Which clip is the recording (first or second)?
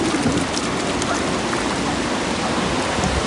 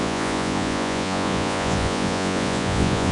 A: first